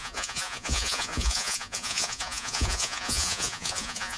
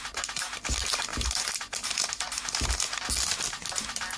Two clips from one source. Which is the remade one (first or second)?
first